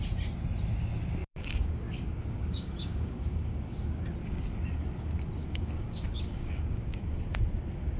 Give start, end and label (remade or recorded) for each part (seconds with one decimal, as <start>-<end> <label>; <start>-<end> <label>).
0.0-1.2 recorded; 1.2-4.0 remade; 4.0-5.4 recorded; 5.4-7.0 remade; 7.0-8.0 recorded